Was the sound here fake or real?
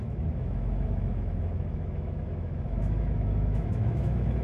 fake